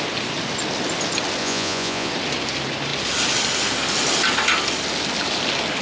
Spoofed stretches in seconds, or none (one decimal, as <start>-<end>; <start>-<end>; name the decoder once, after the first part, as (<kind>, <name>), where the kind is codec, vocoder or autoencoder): 1.4-2.1 (vocoder, Vocos)